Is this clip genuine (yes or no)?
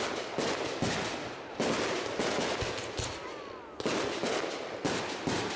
yes